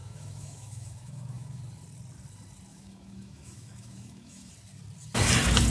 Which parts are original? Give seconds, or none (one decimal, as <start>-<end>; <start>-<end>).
1.6-2.7; 4.5-5.7